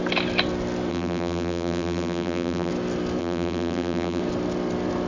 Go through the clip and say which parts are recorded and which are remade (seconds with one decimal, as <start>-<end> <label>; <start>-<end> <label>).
0.0-0.9 recorded; 0.9-2.7 remade; 2.7-3.2 recorded; 3.2-4.2 remade; 4.2-5.1 recorded

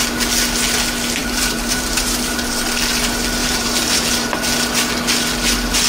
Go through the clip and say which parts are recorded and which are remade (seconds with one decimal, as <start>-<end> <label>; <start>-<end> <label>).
0.0-1.2 recorded; 1.2-2.3 remade; 2.3-3.4 recorded; 3.4-4.4 remade; 4.4-5.9 recorded

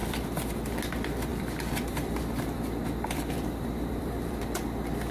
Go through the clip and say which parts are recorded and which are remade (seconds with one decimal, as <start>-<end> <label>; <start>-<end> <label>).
0.0-0.5 remade; 0.5-1.3 recorded; 1.3-4.4 remade; 4.4-5.1 recorded